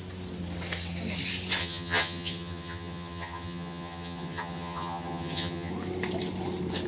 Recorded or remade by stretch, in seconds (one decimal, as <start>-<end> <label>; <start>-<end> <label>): 0.0-1.6 recorded; 1.6-5.7 remade; 5.7-6.9 recorded